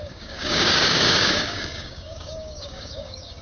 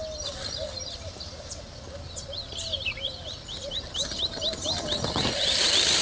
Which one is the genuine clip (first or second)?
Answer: second